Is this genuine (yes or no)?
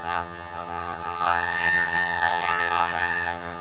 no